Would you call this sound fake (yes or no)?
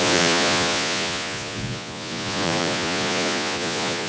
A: yes